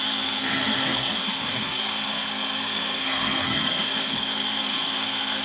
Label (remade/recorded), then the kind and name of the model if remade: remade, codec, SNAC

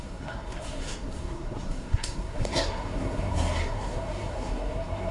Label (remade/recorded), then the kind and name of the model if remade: remade, codec, SNAC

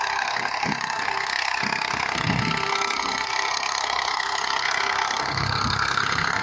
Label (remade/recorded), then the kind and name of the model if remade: remade, codec, SNAC